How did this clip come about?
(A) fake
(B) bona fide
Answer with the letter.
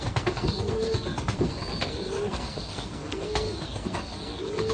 A